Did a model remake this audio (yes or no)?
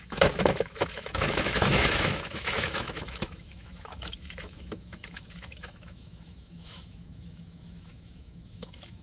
yes